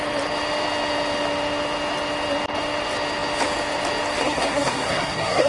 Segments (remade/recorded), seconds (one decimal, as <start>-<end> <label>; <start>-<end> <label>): 0.0-4.2 recorded; 4.2-5.5 remade